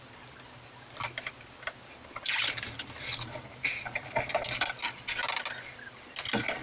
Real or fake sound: real